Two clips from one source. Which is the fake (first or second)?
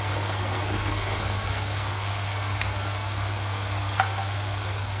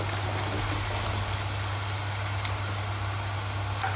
first